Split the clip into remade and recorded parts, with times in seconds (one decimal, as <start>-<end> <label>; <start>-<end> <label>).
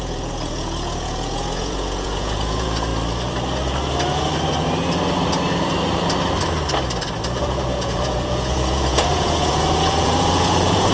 0.0-2.9 remade; 2.9-7.4 recorded; 7.4-10.9 remade